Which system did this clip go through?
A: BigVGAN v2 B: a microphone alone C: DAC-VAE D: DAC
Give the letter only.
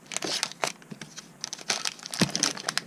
B